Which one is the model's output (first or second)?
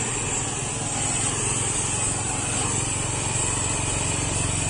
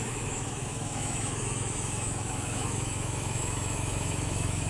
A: second